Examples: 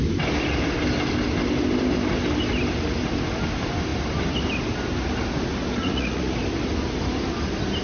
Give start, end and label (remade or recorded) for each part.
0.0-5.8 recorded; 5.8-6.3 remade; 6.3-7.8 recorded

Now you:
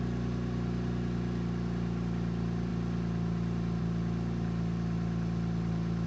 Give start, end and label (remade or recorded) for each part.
0.0-6.1 recorded

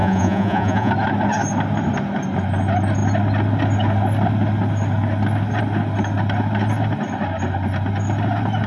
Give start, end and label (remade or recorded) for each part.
0.0-0.9 remade; 0.9-8.7 recorded

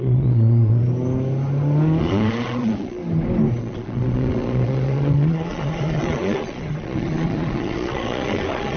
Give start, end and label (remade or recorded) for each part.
0.0-0.8 remade; 0.8-2.0 recorded; 2.0-3.0 remade; 3.0-3.6 recorded; 3.6-8.8 remade

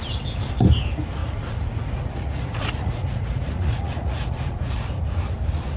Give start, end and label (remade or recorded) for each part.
0.0-1.2 recorded; 1.2-4.7 remade; 4.7-5.8 recorded

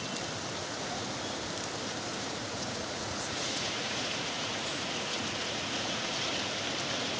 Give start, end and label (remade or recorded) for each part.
0.0-0.6 recorded; 0.6-1.2 remade; 1.2-2.1 recorded; 2.1-6.3 remade; 6.3-7.2 recorded

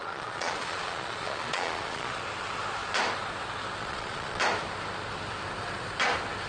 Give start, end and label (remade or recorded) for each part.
0.0-2.2 remade; 2.2-3.8 recorded; 3.8-4.4 remade; 4.4-6.5 recorded

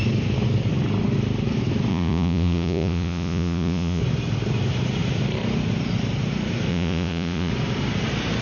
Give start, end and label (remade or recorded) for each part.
0.0-1.9 recorded; 1.9-4.0 remade; 4.0-6.7 recorded; 6.7-7.5 remade; 7.5-8.4 recorded